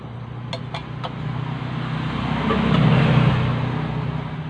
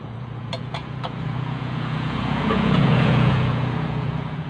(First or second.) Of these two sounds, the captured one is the first